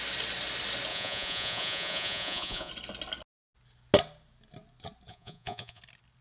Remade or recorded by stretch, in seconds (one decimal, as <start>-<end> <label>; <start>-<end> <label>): 0.0-0.9 recorded; 0.9-2.7 remade; 2.7-5.1 recorded; 5.1-5.8 remade; 5.8-6.2 recorded